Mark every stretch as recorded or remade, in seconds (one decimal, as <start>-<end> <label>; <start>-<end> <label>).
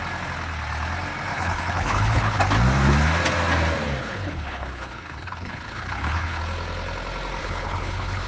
0.0-1.3 recorded; 1.3-2.4 remade; 2.4-4.0 recorded; 4.0-6.4 remade; 6.4-7.4 recorded; 7.4-8.3 remade